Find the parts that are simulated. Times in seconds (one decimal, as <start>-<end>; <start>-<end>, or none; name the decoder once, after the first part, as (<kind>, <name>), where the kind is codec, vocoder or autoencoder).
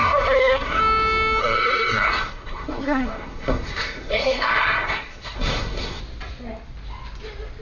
0.0-0.8 (codec, SNAC); 1.4-6.0